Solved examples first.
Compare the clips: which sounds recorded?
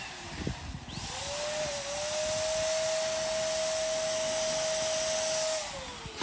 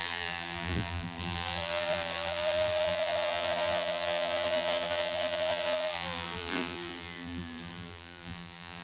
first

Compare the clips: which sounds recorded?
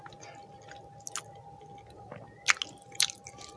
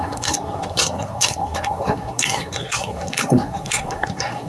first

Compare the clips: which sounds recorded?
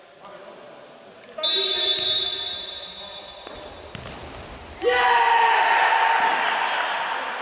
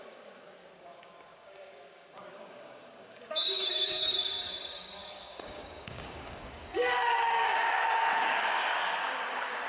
first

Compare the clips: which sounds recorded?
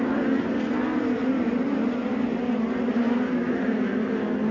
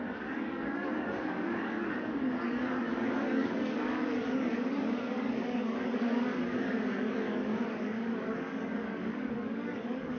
first